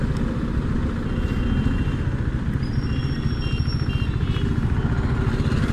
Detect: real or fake real